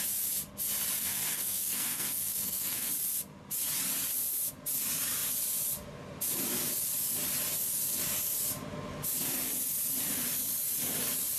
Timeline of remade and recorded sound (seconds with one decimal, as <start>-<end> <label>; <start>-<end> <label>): 0.0-1.0 recorded; 1.0-2.9 remade; 2.9-11.4 recorded